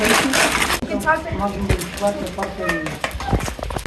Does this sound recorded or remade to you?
recorded